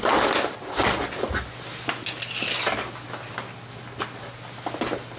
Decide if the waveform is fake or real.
real